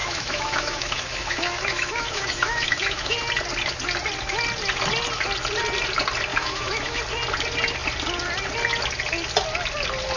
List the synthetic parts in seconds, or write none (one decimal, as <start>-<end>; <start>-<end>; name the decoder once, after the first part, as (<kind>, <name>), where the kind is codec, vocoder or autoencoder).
0.0-3.2 (autoencoder, DAC-VAE); 6.3-7.0